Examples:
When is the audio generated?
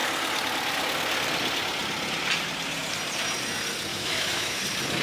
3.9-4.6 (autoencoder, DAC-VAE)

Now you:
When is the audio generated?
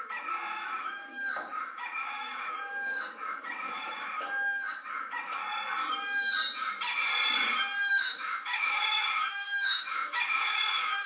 0.0-5.4 (autoencoder, DAC-VAE); 7.9-11.1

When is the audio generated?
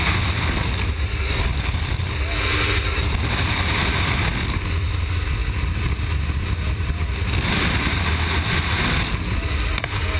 none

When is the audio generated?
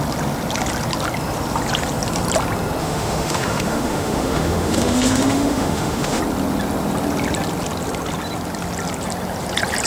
2.8-6.2 (autoencoder, DAC-VAE)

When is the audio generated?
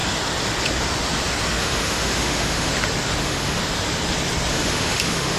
1.6-2.7 (autoencoder, DAC-VAE); 3.2-3.6; 4.5-5.4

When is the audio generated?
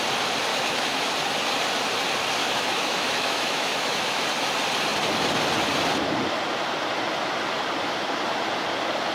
0.5-1.1 (autoencoder, DAC-VAE); 2.4-4.2